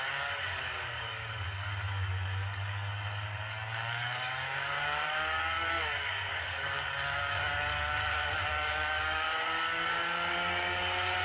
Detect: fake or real fake